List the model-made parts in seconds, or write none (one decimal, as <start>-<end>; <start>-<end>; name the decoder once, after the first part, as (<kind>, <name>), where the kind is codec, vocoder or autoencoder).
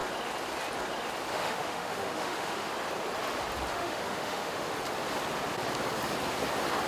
1.3-2.7 (autoencoder, DAC-VAE); 3.7-4.7